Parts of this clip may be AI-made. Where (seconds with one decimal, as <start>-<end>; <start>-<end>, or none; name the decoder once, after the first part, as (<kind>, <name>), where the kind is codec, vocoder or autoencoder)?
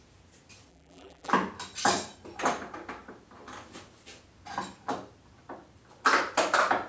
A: 0.7-1.3 (vocoder, BigVGAN v2)